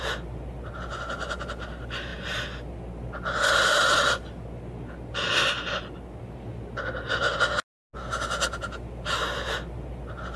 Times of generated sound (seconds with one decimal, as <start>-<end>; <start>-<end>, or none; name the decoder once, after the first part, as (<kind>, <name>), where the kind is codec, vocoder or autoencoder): none